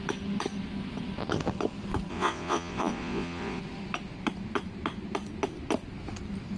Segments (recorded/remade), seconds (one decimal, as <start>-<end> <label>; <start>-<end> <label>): 0.0-2.1 recorded; 2.1-3.6 remade; 3.6-6.6 recorded